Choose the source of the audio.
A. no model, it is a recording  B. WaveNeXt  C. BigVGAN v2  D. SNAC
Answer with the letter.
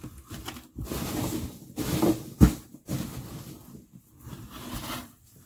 A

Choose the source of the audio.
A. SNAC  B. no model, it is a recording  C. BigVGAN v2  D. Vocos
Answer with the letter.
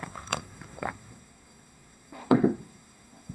A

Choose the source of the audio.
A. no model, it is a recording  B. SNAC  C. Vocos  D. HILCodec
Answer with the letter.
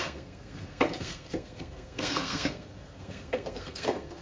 B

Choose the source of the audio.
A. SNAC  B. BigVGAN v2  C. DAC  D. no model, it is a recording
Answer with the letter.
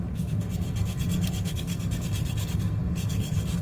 A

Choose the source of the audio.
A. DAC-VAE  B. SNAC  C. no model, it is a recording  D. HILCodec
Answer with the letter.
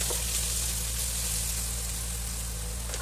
C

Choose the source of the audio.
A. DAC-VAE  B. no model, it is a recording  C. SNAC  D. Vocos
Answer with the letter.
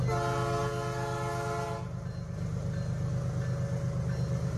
B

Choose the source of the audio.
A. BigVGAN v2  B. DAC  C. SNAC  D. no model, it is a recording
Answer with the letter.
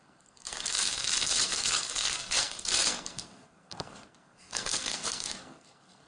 C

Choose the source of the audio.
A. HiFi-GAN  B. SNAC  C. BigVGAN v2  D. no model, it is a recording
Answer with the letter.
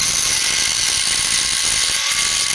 D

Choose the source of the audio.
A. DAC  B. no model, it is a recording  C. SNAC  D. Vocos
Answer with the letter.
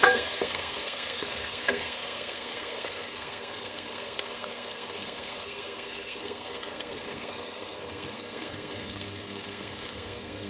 C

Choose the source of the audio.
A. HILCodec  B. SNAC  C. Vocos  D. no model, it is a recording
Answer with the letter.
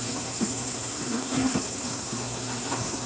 B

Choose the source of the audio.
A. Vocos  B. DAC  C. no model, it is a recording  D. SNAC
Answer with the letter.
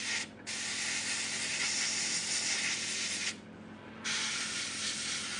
C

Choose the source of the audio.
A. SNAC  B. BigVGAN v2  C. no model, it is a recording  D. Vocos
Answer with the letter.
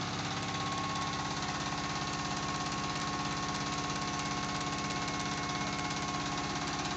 C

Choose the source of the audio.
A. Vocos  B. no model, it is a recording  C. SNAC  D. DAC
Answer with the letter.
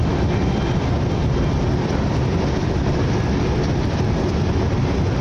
B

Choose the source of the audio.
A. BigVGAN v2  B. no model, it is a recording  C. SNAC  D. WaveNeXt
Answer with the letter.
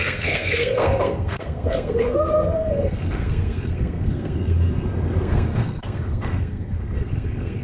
C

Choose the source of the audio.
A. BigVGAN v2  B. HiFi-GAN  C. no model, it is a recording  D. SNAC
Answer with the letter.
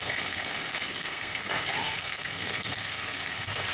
D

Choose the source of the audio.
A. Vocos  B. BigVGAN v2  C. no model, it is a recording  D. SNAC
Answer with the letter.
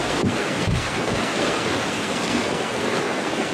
D